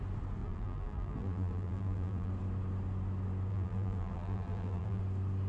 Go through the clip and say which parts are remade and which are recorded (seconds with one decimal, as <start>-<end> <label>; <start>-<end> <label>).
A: 0.0-0.4 recorded; 0.4-2.3 remade; 2.3-3.5 recorded; 3.5-5.0 remade; 5.0-5.5 recorded